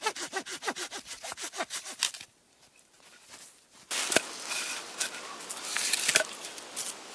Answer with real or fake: real